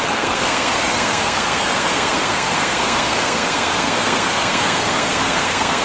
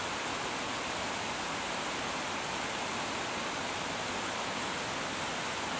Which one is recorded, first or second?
second